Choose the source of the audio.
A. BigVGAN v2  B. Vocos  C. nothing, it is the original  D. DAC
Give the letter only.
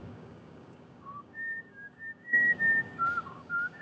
D